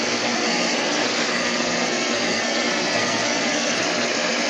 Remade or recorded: remade